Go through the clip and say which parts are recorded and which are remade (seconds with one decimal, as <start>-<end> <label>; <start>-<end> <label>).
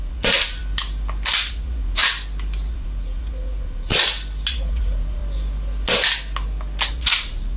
0.0-0.6 remade; 0.6-1.5 recorded; 1.5-2.0 remade; 2.0-2.7 recorded; 2.7-3.9 remade; 3.9-4.5 recorded; 4.5-5.2 remade; 5.2-6.9 recorded; 6.9-7.6 remade